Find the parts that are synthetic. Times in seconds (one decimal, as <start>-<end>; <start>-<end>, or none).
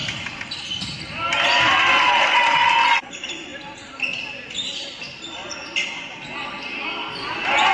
none